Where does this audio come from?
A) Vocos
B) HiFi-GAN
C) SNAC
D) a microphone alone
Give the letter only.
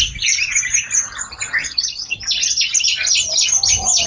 D